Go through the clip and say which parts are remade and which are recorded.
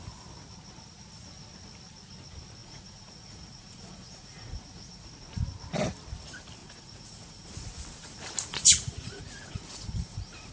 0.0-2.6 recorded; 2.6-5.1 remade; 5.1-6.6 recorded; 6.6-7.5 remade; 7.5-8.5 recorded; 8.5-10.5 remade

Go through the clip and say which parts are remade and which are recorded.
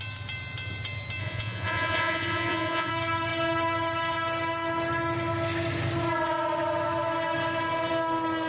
0.0-1.2 recorded; 1.2-2.9 remade; 2.9-8.5 recorded